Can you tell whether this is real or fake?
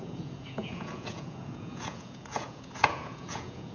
fake